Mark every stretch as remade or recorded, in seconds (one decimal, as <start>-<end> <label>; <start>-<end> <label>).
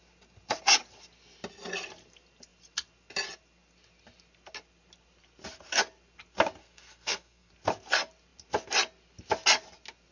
0.0-6.6 recorded; 6.6-7.5 remade; 7.5-10.1 recorded